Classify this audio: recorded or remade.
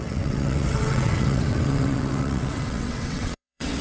remade